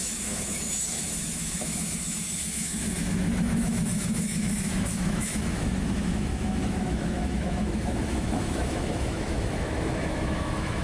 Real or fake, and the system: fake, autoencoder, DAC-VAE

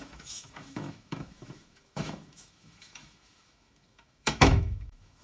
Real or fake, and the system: fake, autoencoder, DAC-VAE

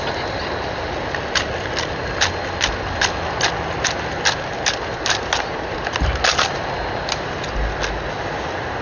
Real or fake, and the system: real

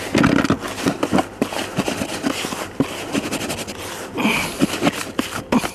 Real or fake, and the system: real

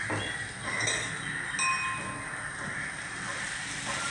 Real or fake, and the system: real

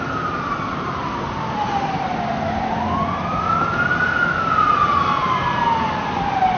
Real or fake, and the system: real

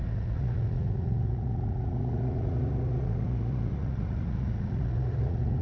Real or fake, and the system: fake, vocoder, Vocos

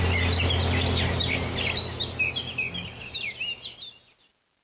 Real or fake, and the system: real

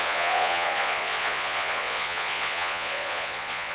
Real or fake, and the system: fake, vocoder, Vocos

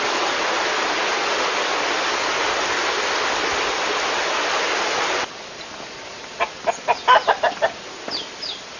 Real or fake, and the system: real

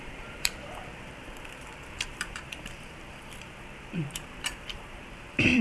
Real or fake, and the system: fake, vocoder, BigVGAN v2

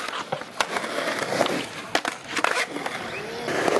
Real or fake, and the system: real